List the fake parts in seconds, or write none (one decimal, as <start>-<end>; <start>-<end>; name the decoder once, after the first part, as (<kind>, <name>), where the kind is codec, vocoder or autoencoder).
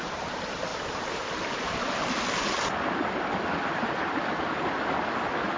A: none